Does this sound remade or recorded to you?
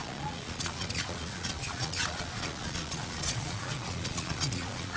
remade